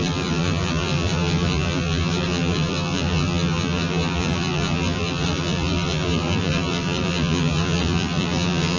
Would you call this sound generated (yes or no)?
yes